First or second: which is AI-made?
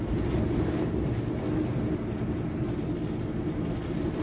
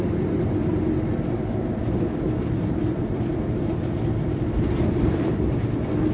second